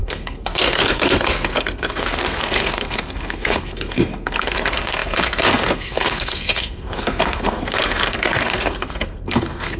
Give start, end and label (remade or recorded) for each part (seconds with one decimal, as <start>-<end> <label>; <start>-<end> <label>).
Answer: 0.0-9.8 remade